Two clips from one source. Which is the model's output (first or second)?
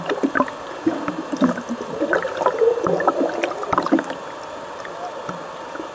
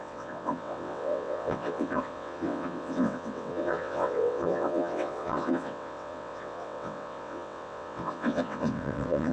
second